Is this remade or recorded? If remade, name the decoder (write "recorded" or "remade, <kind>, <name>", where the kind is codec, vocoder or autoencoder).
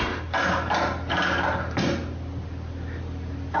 recorded